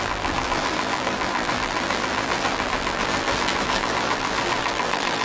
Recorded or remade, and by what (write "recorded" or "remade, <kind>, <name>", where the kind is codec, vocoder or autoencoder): remade, vocoder, BigVGAN v2